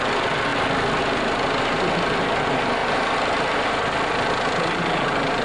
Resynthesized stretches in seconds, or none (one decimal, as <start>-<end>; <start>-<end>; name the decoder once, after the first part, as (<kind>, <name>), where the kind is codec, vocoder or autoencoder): none